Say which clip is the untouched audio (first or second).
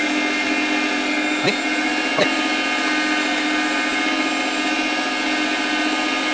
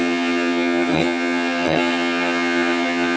first